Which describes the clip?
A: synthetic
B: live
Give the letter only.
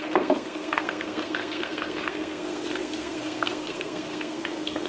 A